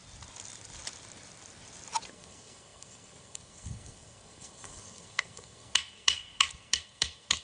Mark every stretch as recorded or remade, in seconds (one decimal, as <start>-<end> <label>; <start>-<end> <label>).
0.0-2.1 recorded; 2.1-7.4 remade